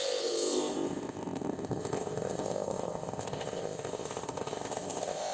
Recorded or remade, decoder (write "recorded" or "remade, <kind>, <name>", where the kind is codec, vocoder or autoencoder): remade, codec, ZipCodec